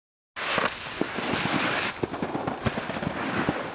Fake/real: real